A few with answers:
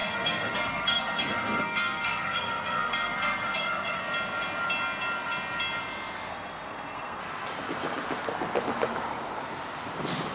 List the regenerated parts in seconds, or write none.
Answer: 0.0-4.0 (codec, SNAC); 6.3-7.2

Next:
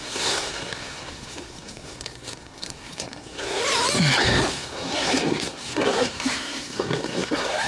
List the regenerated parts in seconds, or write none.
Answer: 0.0-3.6 (codec, SNAC); 4.5-7.7

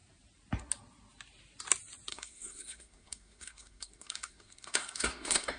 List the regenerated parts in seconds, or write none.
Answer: 2.1-5.6 (codec, SNAC)